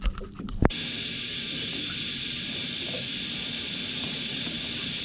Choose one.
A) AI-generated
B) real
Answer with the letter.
A